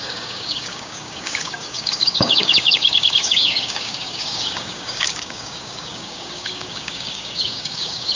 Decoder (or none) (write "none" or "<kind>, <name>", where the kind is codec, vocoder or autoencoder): codec, DAC